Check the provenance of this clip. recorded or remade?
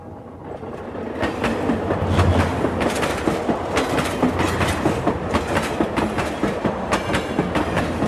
recorded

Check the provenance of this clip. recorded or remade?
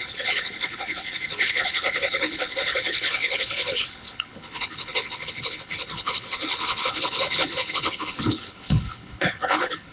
remade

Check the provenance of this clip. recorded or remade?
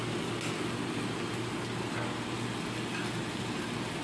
recorded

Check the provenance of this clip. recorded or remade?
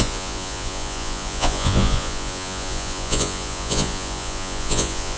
remade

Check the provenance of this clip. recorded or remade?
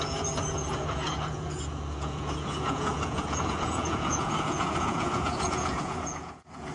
remade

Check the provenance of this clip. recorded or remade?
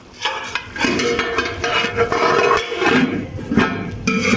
recorded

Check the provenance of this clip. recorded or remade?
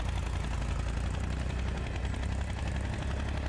recorded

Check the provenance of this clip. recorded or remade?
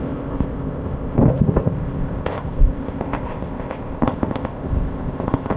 remade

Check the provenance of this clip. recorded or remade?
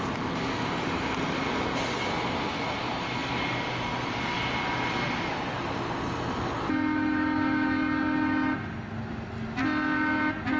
recorded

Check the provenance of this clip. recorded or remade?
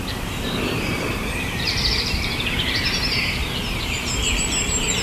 remade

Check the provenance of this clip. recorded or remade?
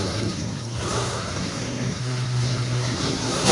remade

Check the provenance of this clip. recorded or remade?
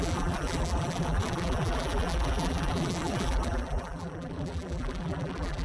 remade